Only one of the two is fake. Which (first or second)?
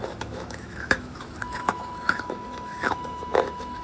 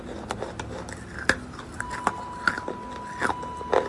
first